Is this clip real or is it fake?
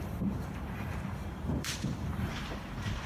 fake